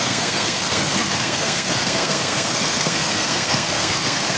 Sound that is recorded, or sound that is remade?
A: remade